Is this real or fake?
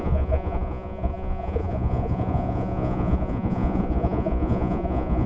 fake